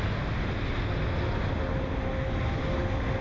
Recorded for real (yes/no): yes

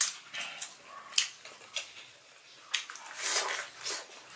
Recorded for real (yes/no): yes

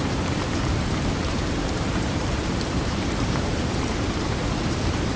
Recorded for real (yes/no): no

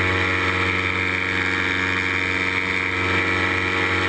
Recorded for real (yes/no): yes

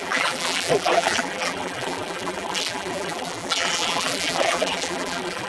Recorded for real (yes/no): no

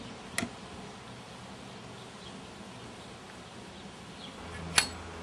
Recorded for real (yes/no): yes